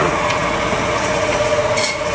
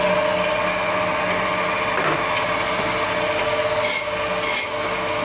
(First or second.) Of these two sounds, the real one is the second